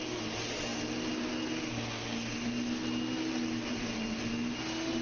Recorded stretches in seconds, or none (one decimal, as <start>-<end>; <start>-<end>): 0.0-5.0